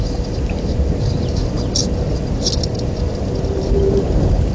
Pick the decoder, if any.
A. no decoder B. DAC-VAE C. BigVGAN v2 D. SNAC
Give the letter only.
A